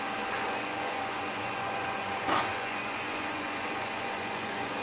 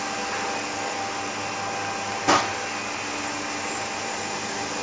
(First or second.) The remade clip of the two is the first